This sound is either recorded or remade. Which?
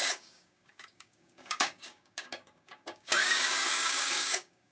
remade